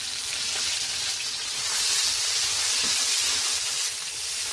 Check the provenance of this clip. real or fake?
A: real